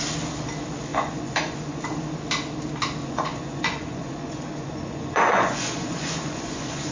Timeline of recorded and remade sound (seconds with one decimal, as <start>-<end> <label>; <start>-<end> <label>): 0.0-0.9 recorded; 0.9-1.8 remade; 1.8-3.0 recorded; 3.0-6.9 remade